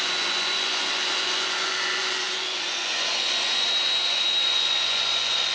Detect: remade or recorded remade